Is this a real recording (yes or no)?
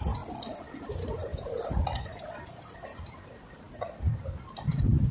yes